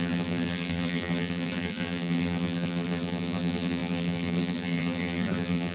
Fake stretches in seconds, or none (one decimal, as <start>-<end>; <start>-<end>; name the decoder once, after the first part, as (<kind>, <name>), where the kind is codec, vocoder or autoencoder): 0.0-5.7 (vocoder, BigVGAN v2)